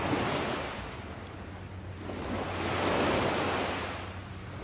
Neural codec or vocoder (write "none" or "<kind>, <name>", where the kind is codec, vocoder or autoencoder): none